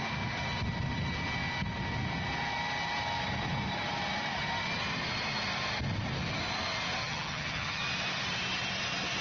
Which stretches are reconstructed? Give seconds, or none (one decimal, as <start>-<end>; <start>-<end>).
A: 7.0-7.8